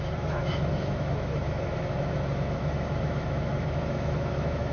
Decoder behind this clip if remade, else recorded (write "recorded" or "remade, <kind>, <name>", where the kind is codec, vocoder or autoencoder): remade, autoencoder, DAC-VAE